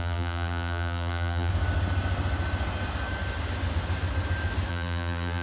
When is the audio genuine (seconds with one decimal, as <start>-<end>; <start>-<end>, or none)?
1.5-4.7